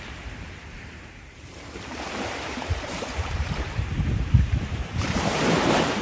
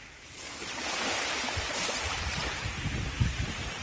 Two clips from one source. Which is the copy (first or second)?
first